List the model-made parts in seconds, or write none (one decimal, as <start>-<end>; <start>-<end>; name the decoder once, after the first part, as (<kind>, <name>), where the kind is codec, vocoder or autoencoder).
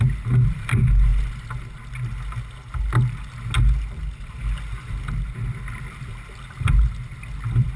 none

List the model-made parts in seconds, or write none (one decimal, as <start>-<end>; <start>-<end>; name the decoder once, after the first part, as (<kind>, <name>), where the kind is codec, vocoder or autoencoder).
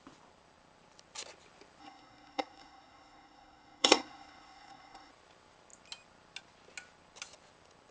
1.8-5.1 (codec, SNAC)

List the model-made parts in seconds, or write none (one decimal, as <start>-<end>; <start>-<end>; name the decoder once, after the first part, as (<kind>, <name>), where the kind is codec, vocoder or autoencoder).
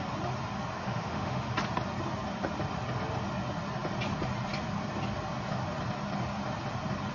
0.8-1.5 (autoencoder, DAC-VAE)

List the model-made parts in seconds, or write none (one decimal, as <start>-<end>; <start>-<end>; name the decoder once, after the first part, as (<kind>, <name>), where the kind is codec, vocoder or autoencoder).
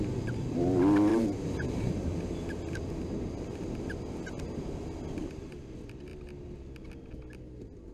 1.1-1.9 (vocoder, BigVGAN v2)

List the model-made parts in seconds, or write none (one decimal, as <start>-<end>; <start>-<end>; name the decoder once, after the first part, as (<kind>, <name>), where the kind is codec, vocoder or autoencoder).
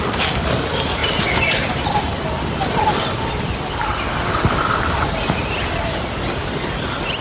none